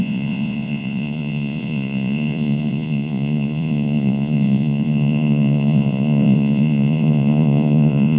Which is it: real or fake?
fake